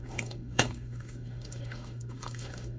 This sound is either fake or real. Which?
fake